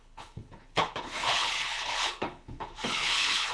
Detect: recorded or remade remade